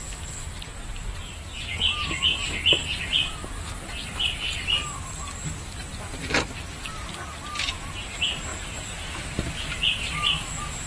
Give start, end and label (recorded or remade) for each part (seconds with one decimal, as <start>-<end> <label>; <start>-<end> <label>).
0.0-10.9 recorded